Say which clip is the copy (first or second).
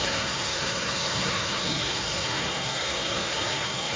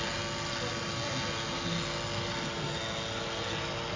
first